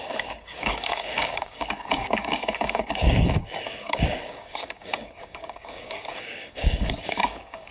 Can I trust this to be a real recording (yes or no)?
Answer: no